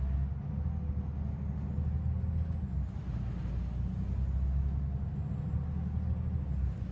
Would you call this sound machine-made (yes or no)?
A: no